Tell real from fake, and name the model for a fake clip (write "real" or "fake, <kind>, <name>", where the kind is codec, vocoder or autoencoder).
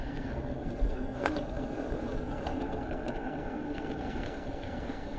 fake, codec, SNAC